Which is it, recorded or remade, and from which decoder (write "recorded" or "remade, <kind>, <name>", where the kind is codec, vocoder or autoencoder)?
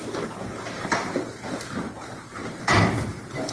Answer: remade, vocoder, BigVGAN v2